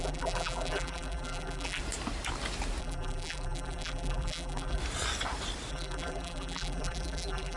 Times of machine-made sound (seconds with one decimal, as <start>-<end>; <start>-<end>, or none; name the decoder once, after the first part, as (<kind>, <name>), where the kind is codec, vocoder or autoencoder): 0.0-1.8 (vocoder, BigVGAN v2); 2.8-4.8; 5.7-7.6